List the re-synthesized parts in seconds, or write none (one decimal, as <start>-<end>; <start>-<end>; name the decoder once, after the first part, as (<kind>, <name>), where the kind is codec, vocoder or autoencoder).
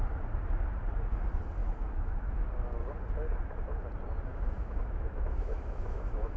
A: 1.6-2.4 (autoencoder, DAC-VAE); 4.3-6.4